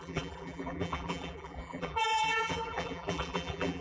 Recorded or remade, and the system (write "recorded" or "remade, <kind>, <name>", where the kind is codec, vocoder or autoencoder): remade, vocoder, BigVGAN v2